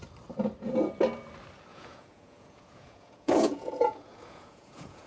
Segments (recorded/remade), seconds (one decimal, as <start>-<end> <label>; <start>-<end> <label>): 0.0-1.7 recorded; 1.7-5.1 remade